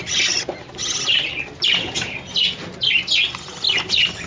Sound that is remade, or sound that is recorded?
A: recorded